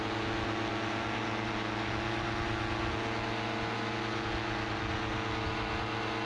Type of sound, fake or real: real